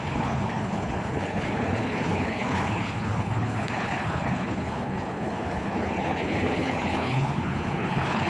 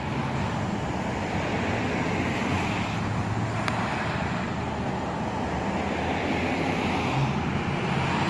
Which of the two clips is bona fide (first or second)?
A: second